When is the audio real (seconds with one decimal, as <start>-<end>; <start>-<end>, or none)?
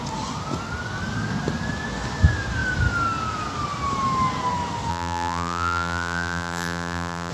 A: 0.0-4.9